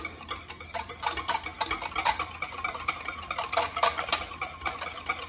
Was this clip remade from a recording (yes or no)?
no